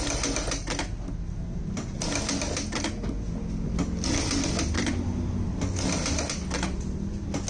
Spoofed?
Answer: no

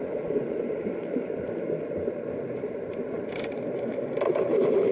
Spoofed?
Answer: yes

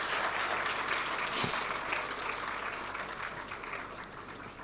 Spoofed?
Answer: no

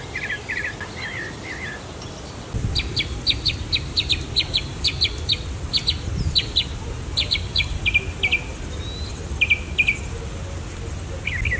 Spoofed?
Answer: no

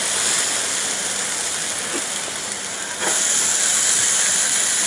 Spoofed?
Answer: no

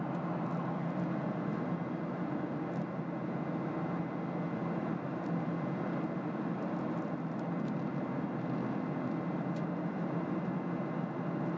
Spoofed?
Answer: no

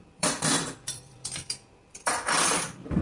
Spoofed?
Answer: yes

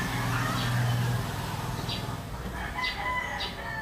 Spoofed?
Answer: no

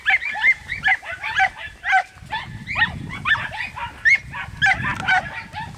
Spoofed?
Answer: no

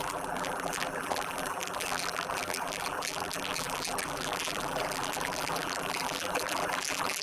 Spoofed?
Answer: yes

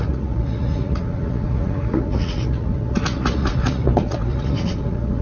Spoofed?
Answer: yes